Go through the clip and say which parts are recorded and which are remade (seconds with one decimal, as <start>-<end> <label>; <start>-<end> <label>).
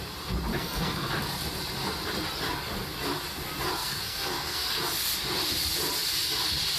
0.0-0.5 recorded; 0.5-1.1 remade; 1.1-3.8 recorded; 3.8-4.8 remade; 4.8-6.8 recorded